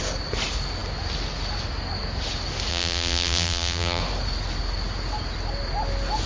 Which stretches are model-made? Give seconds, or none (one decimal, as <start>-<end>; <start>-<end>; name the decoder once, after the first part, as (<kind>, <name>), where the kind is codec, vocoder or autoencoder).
2.7-4.0 (vocoder, BigVGAN v2)